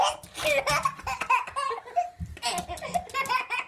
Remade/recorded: recorded